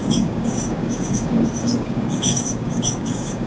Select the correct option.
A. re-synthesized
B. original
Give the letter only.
A